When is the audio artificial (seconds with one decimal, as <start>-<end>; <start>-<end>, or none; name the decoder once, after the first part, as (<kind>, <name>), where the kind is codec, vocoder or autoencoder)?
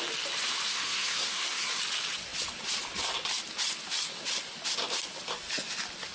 0.7-1.8 (codec, SNAC)